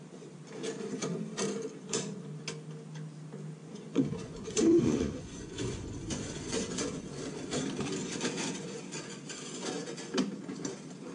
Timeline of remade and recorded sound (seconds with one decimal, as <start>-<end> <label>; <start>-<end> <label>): 0.0-3.6 recorded; 3.6-7.2 remade; 7.2-8.0 recorded; 8.0-9.7 remade; 9.7-11.1 recorded